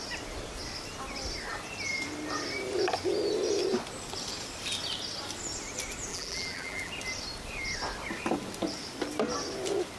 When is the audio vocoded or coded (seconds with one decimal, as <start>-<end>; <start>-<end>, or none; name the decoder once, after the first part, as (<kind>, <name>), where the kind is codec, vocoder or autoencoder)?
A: 6.1-6.9 (vocoder, BigVGAN v2)